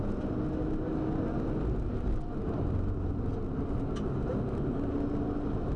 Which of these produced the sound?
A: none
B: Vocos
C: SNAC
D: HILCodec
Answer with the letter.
A